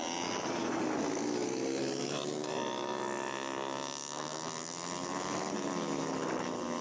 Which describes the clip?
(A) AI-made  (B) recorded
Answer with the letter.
B